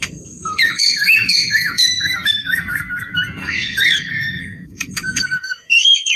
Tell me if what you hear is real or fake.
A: fake